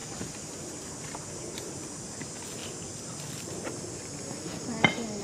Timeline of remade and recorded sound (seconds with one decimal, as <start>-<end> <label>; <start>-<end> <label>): 0.0-5.2 recorded